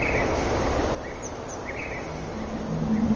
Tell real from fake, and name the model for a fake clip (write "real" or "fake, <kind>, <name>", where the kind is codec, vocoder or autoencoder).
real